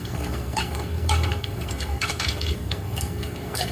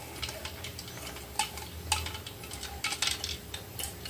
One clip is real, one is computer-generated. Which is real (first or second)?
second